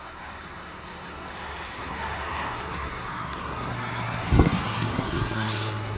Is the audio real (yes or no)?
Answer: no